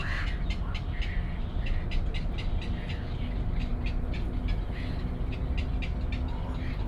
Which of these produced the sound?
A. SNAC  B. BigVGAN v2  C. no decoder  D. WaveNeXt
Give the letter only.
C